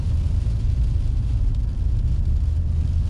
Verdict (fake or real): real